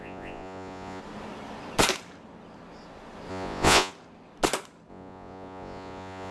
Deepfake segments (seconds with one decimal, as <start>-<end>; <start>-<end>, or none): 0.0-1.0; 3.3-3.9; 4.9-6.3